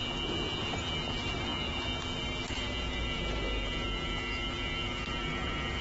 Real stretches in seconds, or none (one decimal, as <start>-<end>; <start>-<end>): 0.0-5.8

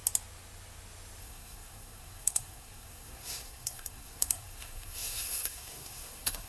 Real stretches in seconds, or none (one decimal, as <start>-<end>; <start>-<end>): 0.0-1.2

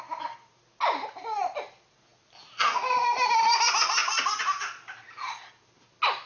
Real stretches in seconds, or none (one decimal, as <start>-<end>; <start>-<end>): 0.0-6.3

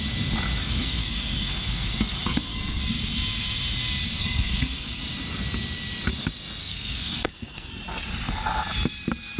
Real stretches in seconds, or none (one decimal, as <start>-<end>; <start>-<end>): 0.0-0.6; 2.8-4.2; 5.0-6.6; 7.7-9.4

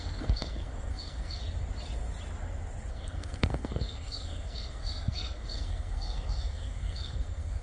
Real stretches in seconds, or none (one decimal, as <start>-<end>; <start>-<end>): 1.4-2.9